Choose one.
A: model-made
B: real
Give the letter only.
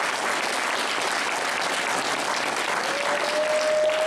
B